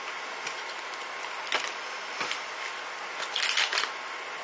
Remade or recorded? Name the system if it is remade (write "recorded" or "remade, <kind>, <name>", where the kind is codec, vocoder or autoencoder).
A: recorded